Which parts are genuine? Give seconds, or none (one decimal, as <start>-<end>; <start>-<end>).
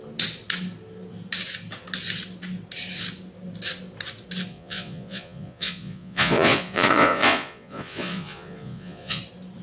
0.0-4.5; 9.2-9.6